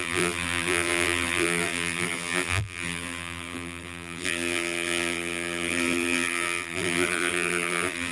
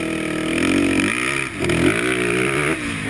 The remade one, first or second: first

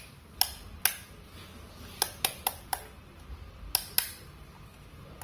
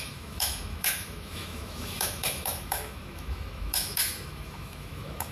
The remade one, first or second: second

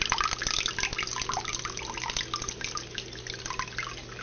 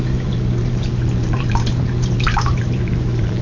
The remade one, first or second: second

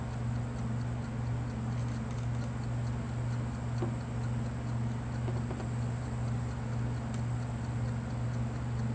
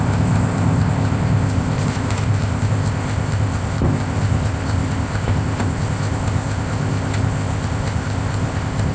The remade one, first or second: second